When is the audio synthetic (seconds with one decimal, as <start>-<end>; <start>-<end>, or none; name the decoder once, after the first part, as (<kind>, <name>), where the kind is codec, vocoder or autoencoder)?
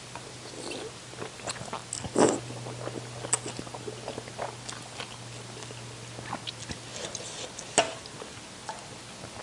none